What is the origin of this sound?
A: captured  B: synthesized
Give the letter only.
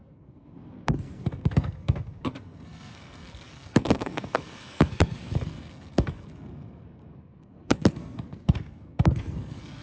B